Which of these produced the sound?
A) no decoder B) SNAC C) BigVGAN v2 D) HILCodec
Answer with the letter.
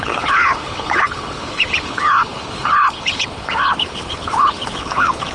D